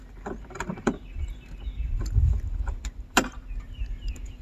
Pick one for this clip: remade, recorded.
remade